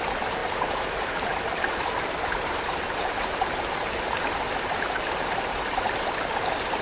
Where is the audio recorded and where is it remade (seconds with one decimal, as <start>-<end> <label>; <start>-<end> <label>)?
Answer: 0.0-6.8 remade